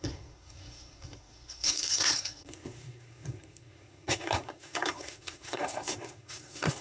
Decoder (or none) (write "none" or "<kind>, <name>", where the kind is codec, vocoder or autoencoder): codec, SNAC